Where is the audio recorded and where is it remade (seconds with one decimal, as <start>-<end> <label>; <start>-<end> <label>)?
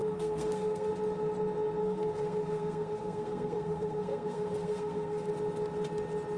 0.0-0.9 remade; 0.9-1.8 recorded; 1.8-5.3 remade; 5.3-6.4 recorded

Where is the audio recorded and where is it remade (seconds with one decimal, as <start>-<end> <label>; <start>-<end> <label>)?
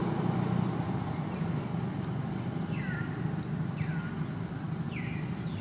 0.0-5.6 recorded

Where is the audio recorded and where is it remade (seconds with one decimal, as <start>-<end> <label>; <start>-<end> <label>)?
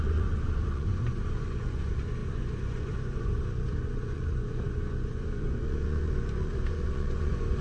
0.0-7.6 remade